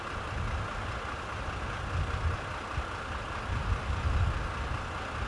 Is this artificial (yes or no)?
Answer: no